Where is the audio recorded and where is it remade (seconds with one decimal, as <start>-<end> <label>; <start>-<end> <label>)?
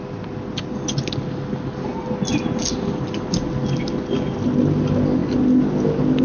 0.0-6.2 recorded